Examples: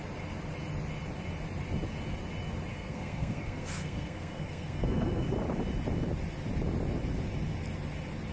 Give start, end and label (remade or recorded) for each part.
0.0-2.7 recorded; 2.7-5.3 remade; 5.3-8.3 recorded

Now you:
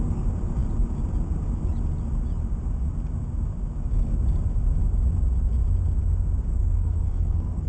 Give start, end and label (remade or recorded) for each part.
0.0-6.5 recorded; 6.5-7.7 remade

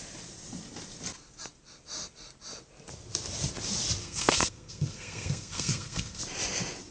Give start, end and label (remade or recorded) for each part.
0.0-4.0 recorded; 4.0-6.2 remade; 6.2-6.9 recorded

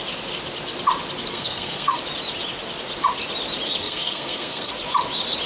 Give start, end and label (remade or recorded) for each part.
0.0-1.3 recorded; 1.3-2.0 remade; 2.0-3.8 recorded; 3.8-4.7 remade; 4.7-5.5 recorded

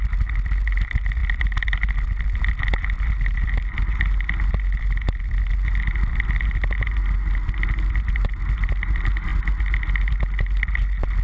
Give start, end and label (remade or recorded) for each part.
0.0-11.2 recorded

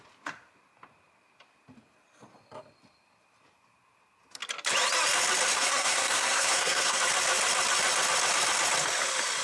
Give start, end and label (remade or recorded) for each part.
0.0-5.5 recorded; 5.5-7.0 remade; 7.0-9.4 recorded

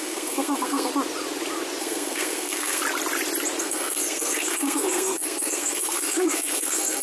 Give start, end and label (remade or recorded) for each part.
0.0-0.9 remade; 0.9-1.8 recorded; 1.8-2.8 remade; 2.8-3.6 recorded; 3.6-7.0 remade